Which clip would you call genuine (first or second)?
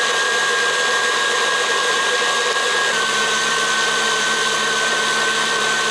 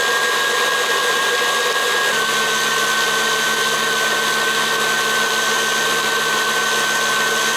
second